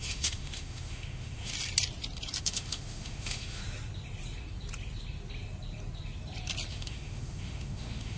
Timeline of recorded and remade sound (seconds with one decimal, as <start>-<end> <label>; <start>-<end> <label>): 0.0-1.5 remade; 1.5-2.4 recorded; 2.4-3.6 remade; 3.6-6.7 recorded; 6.7-8.2 remade